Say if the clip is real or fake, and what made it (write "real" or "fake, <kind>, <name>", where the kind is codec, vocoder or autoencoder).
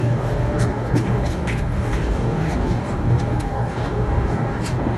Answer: fake, codec, DAC